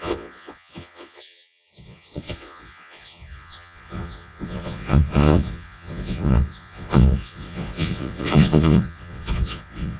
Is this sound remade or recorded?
remade